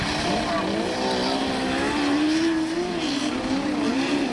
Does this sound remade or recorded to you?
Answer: recorded